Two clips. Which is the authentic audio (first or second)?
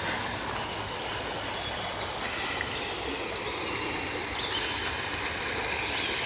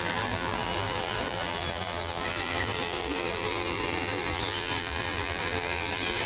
first